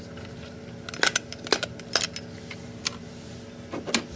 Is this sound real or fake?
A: real